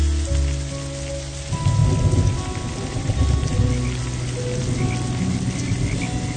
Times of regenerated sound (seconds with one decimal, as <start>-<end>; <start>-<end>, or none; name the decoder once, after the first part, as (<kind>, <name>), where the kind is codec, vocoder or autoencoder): none